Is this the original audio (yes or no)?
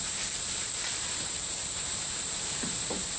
no